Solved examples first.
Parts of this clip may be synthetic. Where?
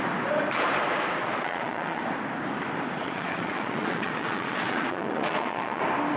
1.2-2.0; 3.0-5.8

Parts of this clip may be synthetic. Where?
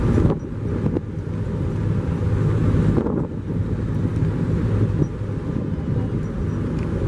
none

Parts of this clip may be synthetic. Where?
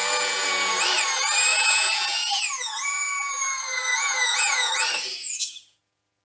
0.0-0.7; 1.5-4.7; 5.2-6.2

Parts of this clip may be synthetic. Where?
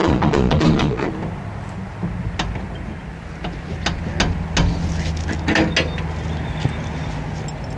0.0-1.1